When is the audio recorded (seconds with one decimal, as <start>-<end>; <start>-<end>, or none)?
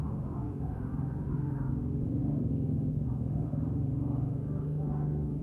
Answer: none